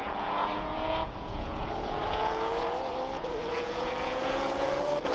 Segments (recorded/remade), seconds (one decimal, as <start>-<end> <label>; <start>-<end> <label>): 0.0-2.9 remade; 2.9-3.5 recorded; 3.5-5.1 remade